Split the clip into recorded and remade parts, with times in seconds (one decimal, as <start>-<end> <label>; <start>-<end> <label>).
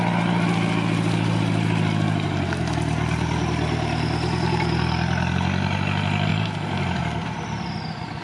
0.0-6.3 recorded; 6.3-7.0 remade; 7.0-8.2 recorded